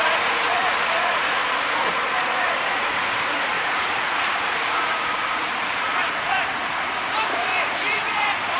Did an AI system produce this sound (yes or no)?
yes